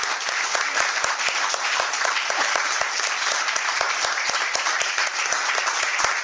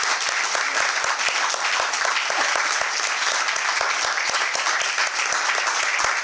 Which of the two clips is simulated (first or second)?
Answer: first